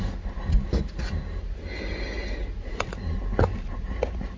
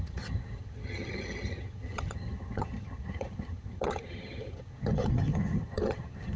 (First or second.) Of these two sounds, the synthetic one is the second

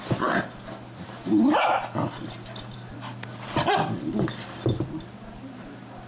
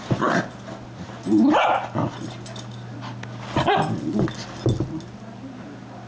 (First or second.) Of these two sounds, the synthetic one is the first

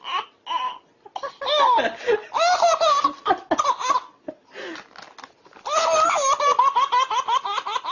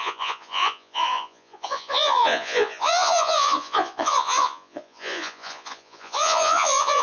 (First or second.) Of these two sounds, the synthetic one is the second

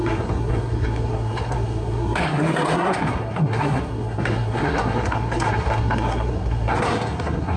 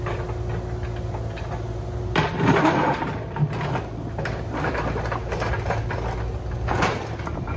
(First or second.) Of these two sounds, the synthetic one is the first